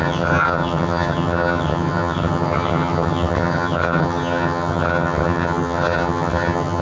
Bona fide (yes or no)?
no